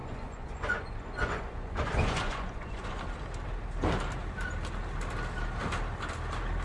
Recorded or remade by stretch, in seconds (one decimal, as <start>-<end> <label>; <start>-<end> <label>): 0.0-3.0 remade; 3.0-6.6 recorded

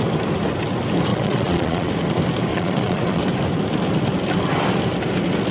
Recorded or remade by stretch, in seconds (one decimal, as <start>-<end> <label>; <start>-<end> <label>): 0.0-1.1 recorded; 1.1-1.9 remade; 1.9-2.5 recorded; 2.5-3.2 remade; 3.2-5.5 recorded